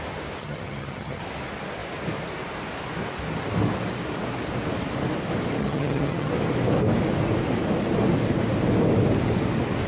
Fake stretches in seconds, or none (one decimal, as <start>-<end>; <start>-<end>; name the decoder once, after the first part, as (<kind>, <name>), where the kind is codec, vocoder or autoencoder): 0.4-1.2 (vocoder, HiFi-GAN); 5.6-6.3